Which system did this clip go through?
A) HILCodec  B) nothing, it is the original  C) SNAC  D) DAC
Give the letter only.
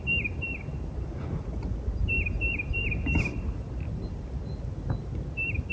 B